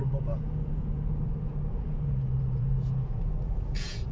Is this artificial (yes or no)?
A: yes